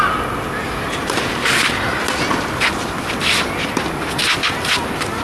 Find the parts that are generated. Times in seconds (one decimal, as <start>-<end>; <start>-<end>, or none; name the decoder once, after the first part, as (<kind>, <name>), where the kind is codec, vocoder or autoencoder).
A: none

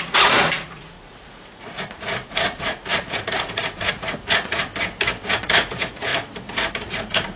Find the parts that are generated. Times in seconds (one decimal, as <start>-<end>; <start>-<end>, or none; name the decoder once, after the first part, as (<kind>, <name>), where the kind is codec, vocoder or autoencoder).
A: 0.0-4.7 (vocoder, Vocos); 5.3-6.1; 6.7-7.4

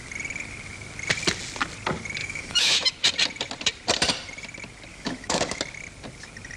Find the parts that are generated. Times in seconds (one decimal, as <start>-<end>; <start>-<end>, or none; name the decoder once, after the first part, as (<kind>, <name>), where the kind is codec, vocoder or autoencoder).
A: 2.2-2.9 (autoencoder, DAC-VAE); 4.9-5.6

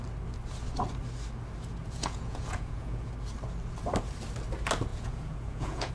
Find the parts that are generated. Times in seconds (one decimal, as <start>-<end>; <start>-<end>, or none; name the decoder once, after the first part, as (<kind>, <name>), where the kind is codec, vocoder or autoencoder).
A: 1.8-3.1 (vocoder, Vocos); 4.9-5.9

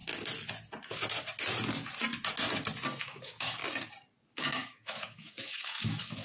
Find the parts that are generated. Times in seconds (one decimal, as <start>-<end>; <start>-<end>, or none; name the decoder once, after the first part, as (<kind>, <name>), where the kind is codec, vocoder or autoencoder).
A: 3.0-3.6 (autoencoder, DAC-VAE); 4.3-6.2

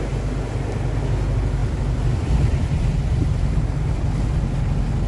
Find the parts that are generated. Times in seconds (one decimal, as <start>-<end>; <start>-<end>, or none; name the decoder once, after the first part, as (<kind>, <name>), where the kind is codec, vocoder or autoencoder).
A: 1.6-4.4 (vocoder, BigVGAN v2)

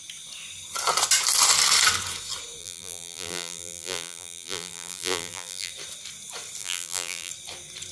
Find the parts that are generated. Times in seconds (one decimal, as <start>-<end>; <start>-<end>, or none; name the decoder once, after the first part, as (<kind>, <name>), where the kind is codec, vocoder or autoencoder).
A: 2.6-5.7 (vocoder, BigVGAN v2); 6.6-7.3

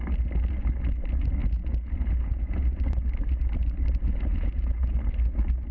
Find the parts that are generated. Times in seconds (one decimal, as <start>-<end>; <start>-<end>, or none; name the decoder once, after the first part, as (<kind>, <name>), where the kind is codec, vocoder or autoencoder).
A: 1.4-2.6 (vocoder, Vocos); 4.3-4.9